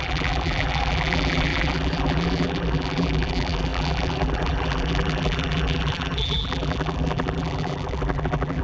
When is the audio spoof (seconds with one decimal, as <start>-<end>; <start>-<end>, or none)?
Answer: 0.0-8.6